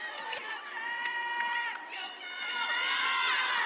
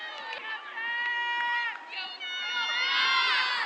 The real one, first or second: second